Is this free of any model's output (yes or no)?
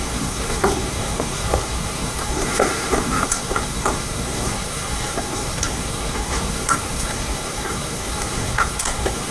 no